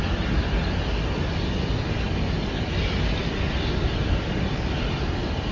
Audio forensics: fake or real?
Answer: real